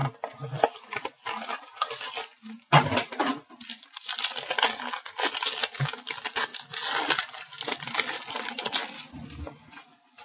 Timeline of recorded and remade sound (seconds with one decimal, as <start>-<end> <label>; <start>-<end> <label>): 0.0-3.9 remade; 3.9-6.5 recorded; 6.5-9.7 remade; 9.7-10.2 recorded